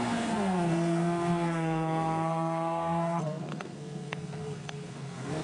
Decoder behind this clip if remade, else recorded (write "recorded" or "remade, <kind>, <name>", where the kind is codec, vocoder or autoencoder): remade, codec, SNAC